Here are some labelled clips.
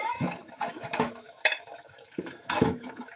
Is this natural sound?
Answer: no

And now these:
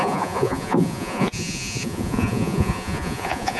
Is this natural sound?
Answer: no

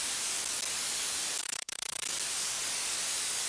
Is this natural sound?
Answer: no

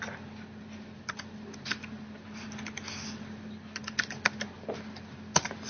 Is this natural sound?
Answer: yes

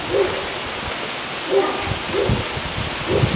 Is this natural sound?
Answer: yes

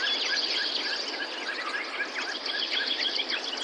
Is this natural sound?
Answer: yes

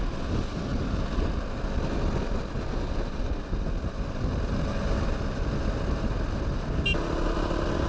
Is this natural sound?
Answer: yes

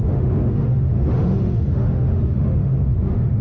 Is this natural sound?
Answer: no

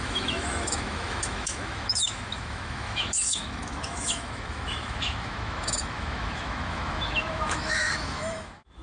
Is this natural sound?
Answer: no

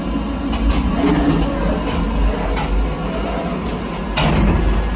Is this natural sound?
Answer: yes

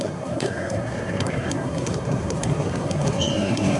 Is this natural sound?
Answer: no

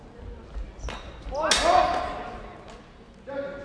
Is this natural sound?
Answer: yes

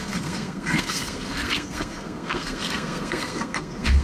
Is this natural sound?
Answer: no